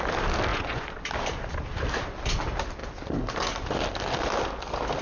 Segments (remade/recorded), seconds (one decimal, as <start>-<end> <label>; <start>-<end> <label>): 0.0-0.5 recorded; 0.5-1.0 remade; 1.0-5.0 recorded